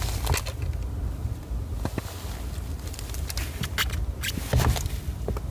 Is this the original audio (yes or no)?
yes